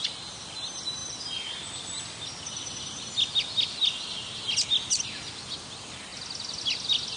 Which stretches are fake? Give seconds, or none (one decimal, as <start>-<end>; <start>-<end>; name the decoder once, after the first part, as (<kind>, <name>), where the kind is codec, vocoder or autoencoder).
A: none